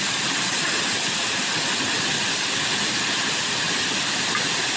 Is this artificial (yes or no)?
no